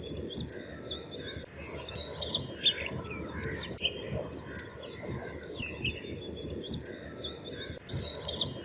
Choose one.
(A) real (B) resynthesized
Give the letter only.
A